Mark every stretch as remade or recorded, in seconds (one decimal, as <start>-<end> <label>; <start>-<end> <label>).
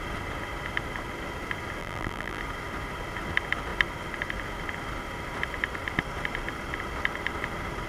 0.0-1.8 recorded; 1.8-2.4 remade; 2.4-7.9 recorded